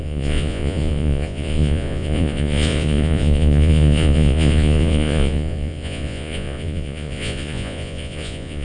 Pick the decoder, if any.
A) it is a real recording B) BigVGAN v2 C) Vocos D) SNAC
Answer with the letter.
C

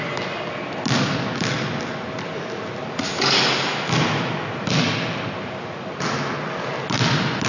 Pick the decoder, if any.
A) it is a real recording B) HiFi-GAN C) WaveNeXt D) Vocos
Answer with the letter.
A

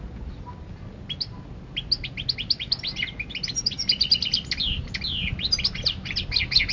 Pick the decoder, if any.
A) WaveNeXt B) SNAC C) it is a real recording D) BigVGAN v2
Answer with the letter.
C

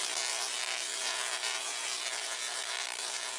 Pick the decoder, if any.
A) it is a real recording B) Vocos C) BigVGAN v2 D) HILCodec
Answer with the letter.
C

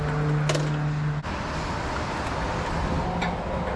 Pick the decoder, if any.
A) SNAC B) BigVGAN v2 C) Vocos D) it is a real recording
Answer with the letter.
D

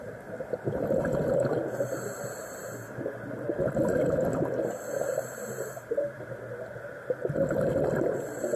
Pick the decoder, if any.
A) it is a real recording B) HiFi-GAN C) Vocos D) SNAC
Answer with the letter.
A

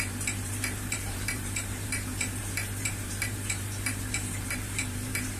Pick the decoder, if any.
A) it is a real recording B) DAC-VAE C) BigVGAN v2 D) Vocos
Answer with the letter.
C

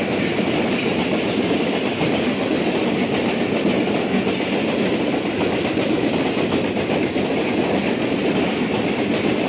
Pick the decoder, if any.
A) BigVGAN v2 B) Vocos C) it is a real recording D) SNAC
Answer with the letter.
C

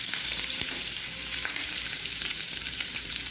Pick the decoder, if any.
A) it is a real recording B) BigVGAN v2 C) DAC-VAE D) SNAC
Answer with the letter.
B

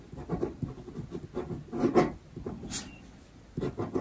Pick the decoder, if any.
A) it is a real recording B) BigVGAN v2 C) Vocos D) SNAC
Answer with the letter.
A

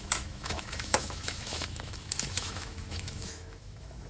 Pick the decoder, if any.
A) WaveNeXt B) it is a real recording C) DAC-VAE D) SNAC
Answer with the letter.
C